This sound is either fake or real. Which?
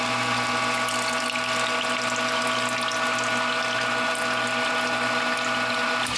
real